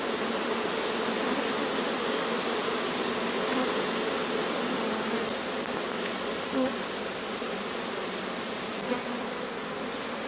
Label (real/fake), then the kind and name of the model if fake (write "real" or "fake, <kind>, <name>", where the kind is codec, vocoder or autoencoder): real